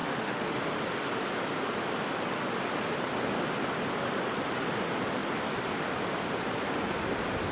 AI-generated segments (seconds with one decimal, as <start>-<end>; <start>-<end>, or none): 0.0-0.6